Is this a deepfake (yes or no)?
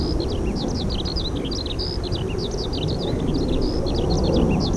no